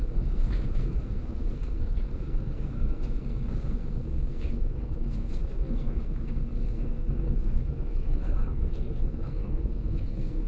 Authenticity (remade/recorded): remade